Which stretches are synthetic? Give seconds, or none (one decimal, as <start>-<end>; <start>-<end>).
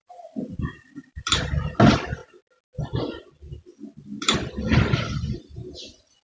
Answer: 0.0-1.8; 3.8-5.0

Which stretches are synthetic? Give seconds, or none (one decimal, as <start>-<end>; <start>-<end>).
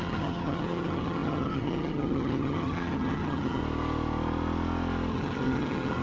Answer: 0.0-3.6; 5.1-6.0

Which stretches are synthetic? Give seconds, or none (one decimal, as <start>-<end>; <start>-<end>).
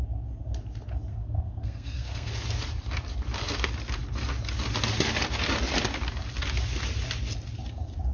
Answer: 1.1-2.3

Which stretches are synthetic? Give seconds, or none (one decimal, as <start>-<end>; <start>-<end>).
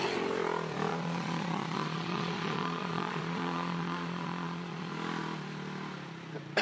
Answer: 0.9-4.9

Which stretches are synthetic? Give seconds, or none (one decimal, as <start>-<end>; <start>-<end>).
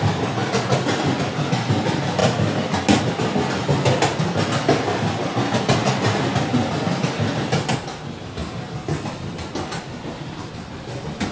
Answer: 6.5-7.1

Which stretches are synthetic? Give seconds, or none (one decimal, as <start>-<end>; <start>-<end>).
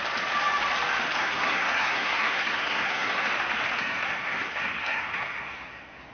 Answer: 1.2-3.3; 3.8-6.1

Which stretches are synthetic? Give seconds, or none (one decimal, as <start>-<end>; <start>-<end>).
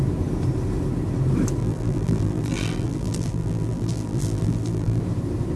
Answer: 1.6-5.0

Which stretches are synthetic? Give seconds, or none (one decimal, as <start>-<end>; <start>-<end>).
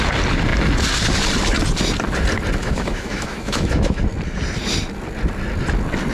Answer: 2.6-4.0